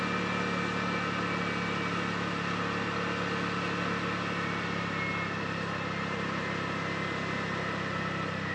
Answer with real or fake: real